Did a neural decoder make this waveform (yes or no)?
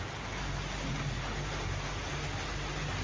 no